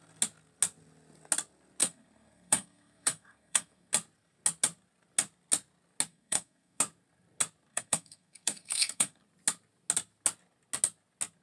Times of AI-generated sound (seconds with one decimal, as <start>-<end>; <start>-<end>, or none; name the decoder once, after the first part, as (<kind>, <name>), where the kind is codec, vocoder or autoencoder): 1.8-3.9 (codec, SNAC); 6.1-6.8; 7.7-9.2